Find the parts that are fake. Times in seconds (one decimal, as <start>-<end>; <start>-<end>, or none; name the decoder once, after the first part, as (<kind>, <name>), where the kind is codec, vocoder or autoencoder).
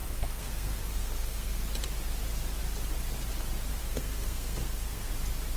0.0-1.6 (codec, SNAC); 3.8-5.1